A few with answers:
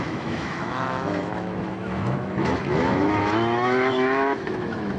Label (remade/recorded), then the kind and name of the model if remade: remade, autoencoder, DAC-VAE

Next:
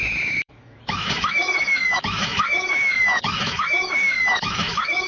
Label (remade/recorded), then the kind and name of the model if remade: remade, autoencoder, DAC-VAE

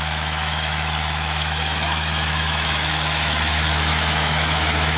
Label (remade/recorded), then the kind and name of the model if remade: remade, autoencoder, DAC-VAE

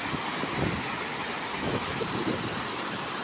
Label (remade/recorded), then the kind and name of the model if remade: recorded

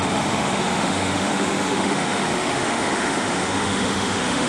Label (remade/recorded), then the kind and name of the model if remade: remade, autoencoder, DAC-VAE